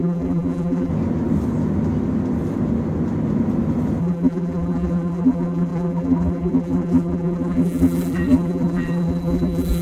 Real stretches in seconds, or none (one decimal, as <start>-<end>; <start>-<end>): 0.9-4.0